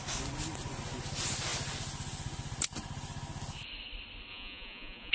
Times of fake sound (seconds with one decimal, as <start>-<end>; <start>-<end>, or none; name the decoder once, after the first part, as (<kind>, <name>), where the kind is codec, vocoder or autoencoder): 4.3-5.1 (vocoder, Vocos)